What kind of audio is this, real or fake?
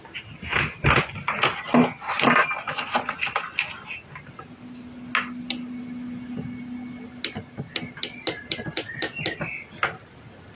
real